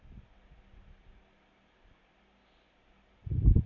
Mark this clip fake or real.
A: real